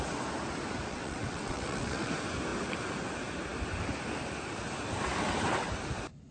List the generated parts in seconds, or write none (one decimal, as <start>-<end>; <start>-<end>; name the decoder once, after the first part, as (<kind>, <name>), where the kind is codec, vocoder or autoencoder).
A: 0.9-2.1 (vocoder, WaveNeXt)